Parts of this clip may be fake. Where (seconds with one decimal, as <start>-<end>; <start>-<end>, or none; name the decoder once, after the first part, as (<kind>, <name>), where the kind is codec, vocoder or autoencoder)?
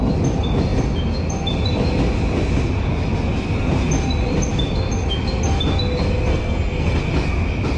6.3-7.0 (codec, SNAC)